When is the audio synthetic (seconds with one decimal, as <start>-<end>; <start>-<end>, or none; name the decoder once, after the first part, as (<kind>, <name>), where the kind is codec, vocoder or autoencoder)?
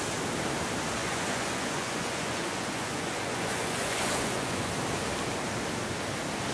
1.0-4.7 (vocoder, Vocos)